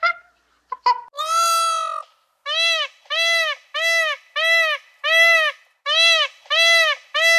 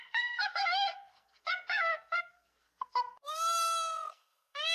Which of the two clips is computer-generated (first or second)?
second